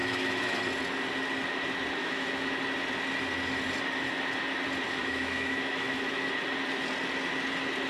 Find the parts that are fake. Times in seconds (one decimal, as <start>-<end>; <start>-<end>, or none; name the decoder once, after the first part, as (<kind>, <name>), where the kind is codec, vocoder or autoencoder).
0.0-0.6 (autoencoder, DAC-VAE); 2.0-2.6; 5.0-6.3